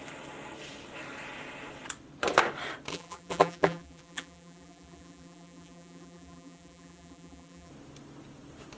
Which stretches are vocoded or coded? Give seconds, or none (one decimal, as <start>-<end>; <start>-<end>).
2.9-7.7